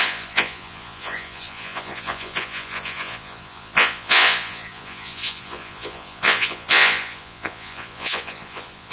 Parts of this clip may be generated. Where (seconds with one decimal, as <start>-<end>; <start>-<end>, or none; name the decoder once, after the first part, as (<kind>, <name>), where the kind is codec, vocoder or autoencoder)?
0.0-8.9 (vocoder, Vocos)